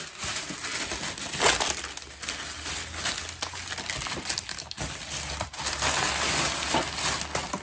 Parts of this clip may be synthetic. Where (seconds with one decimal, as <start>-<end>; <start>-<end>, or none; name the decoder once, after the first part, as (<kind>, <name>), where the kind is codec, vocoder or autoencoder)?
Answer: none